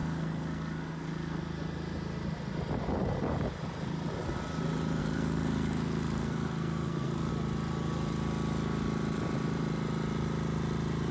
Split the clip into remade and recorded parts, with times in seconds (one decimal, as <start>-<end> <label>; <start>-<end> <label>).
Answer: 0.0-1.4 remade; 1.4-5.0 recorded; 5.0-7.3 remade; 7.3-11.1 recorded